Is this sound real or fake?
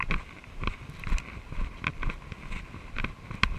real